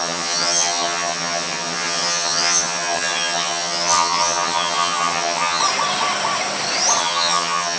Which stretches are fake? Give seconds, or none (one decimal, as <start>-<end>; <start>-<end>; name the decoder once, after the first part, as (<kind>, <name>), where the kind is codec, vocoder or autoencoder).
0.0-5.6 (vocoder, HiFi-GAN); 7.0-7.8